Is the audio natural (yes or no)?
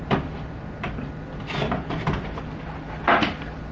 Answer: yes